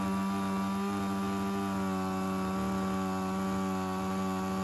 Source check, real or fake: real